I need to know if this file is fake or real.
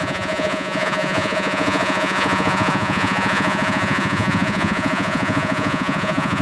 fake